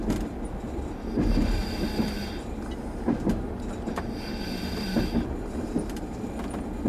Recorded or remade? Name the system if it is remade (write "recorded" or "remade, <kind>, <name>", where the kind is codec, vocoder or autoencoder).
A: remade, vocoder, BigVGAN v2